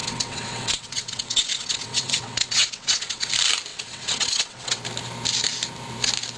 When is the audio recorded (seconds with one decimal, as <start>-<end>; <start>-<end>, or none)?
3.3-3.7; 4.8-6.4